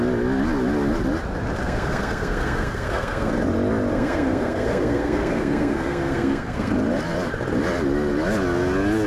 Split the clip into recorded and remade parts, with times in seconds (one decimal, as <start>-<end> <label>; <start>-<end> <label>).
0.0-1.6 recorded; 1.6-3.3 remade; 3.3-3.9 recorded; 3.9-6.7 remade; 6.7-9.1 recorded